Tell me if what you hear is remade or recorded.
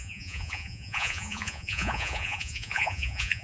remade